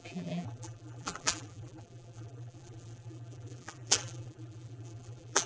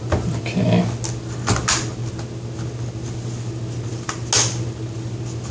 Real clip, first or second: second